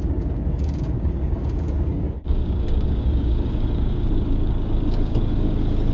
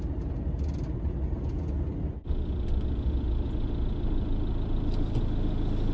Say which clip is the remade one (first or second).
first